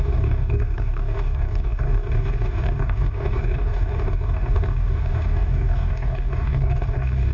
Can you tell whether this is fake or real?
fake